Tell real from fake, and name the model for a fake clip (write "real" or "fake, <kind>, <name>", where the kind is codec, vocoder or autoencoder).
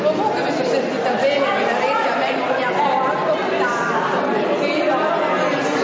real